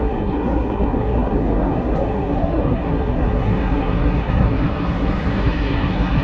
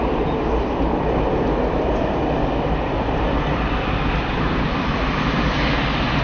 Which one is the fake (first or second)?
first